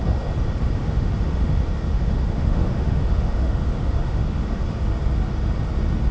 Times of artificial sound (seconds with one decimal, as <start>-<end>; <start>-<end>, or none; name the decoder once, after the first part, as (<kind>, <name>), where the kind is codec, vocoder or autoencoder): 0.8-1.4 (autoencoder, DAC-VAE); 1.9-4.8